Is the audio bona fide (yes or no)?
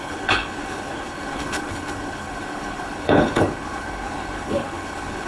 no